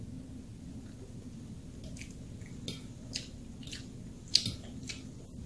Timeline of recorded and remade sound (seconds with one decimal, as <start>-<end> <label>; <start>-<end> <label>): 0.0-5.5 recorded